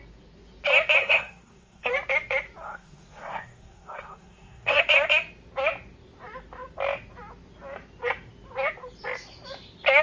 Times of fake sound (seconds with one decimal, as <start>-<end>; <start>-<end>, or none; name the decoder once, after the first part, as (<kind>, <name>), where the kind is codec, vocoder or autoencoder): 1.0-1.9 (codec, SNAC); 2.6-4.8